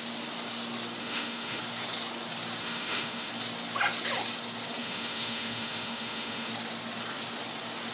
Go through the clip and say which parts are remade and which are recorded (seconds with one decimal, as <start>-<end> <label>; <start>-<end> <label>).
0.0-1.0 recorded; 1.0-1.6 remade; 1.6-2.6 recorded; 2.6-3.3 remade; 3.3-4.8 recorded; 4.8-6.5 remade; 6.5-7.9 recorded

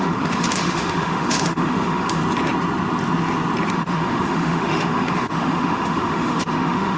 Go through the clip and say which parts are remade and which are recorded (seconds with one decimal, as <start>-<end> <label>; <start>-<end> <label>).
0.0-2.2 remade; 2.2-3.7 recorded; 3.7-7.0 remade

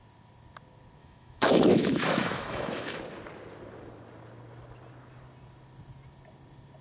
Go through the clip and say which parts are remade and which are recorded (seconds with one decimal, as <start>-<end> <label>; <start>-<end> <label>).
0.0-1.0 recorded; 1.0-3.0 remade; 3.0-6.8 recorded

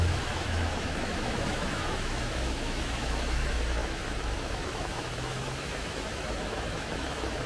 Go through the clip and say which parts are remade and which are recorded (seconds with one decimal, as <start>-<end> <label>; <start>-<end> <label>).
0.0-7.5 remade

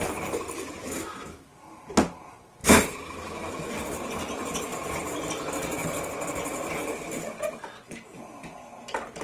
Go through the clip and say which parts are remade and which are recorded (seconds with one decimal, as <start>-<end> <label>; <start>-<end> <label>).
0.0-0.8 recorded; 0.8-1.5 remade; 1.5-2.6 recorded; 2.6-3.7 remade; 3.7-9.2 recorded

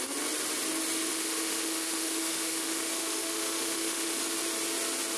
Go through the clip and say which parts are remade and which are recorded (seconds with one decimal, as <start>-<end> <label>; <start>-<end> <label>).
0.0-1.1 recorded; 1.1-4.2 remade; 4.2-5.2 recorded

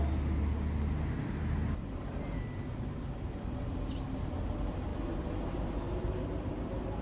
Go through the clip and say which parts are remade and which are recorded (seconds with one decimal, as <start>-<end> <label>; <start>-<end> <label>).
0.0-7.0 recorded

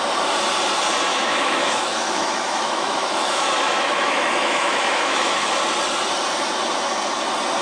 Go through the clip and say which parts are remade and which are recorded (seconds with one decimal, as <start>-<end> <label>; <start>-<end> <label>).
0.0-1.1 recorded; 1.1-5.5 remade; 5.5-7.6 recorded